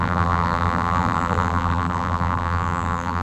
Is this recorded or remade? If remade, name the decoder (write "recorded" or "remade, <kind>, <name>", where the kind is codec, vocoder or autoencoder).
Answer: remade, vocoder, BigVGAN v2